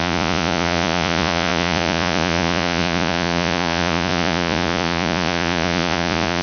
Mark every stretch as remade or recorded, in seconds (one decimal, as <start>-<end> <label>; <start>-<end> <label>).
0.0-6.4 remade